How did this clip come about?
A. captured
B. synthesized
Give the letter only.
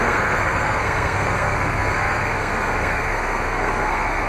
B